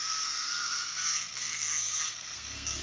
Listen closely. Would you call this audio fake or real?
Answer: fake